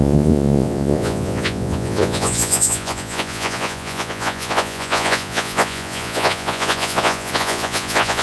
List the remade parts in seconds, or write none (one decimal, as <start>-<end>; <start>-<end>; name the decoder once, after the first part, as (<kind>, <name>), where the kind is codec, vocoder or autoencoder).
0.0-8.2 (vocoder, Vocos)